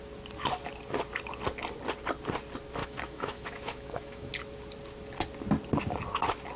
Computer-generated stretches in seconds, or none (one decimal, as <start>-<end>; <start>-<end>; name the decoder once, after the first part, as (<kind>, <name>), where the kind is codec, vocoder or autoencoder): 2.8-4.3 (autoencoder, DAC-VAE)